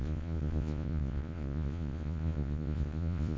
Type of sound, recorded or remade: remade